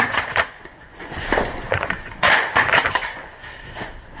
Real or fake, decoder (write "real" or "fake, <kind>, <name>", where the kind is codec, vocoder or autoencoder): fake, vocoder, Vocos